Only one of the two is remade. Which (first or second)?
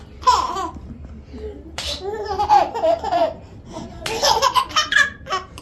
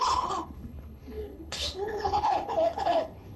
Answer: second